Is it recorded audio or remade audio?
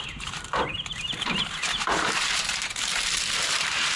remade